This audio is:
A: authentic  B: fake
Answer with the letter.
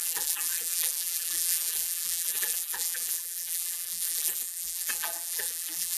B